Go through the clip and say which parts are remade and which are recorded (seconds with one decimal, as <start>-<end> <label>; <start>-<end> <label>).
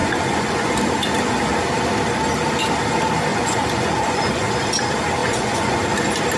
0.0-0.7 remade; 0.7-3.3 recorded; 3.3-4.5 remade; 4.5-5.2 recorded; 5.2-5.8 remade; 5.8-6.4 recorded